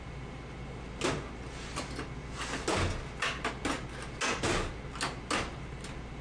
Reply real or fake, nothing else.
real